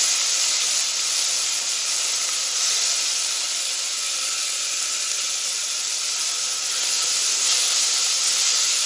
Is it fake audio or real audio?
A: real